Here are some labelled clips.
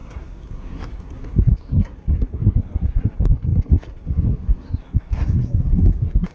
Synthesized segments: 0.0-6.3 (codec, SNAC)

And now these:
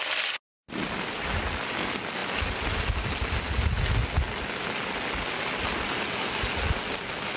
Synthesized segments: none